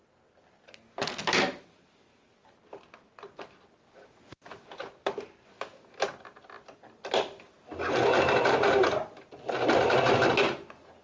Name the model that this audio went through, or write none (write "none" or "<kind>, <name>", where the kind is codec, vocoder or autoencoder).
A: none